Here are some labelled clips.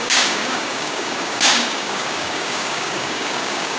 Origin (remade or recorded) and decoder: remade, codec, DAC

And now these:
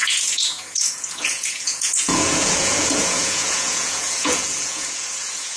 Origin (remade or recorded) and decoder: remade, vocoder, Vocos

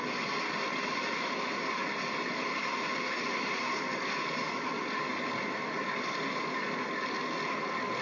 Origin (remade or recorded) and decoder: recorded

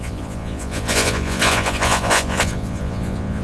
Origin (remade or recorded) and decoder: remade, vocoder, Vocos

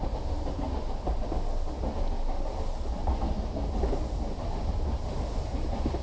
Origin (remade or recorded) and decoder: recorded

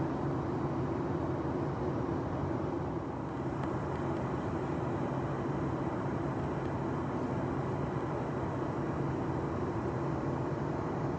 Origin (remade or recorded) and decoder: recorded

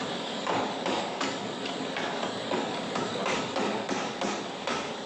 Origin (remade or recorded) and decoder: remade, codec, DAC